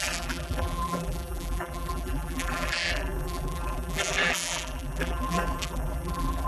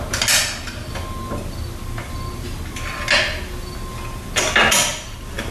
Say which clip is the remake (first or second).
first